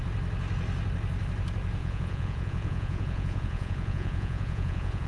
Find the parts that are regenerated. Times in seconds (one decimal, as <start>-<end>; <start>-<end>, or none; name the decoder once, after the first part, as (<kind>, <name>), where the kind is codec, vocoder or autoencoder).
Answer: 1.8-5.1 (vocoder, Vocos)